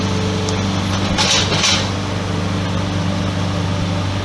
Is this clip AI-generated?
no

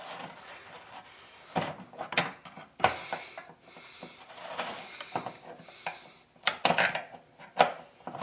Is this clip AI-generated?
no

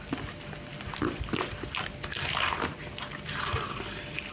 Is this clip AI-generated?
no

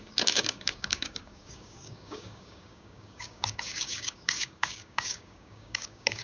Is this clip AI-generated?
yes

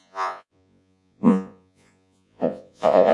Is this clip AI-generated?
yes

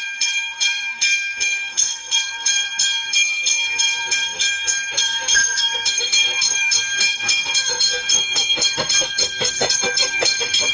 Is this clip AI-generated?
yes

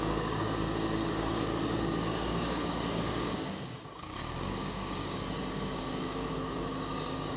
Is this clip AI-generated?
yes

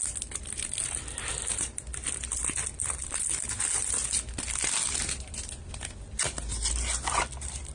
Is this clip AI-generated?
no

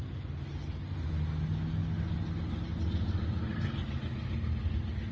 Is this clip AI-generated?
no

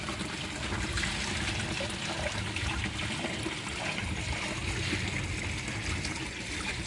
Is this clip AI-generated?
no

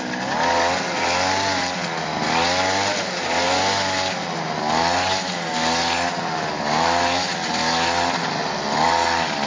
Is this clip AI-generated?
no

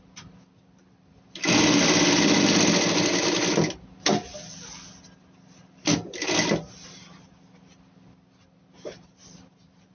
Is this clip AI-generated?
no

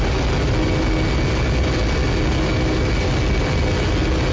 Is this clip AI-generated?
no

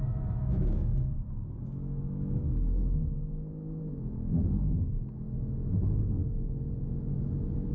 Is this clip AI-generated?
yes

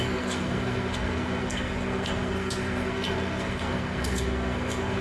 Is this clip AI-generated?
yes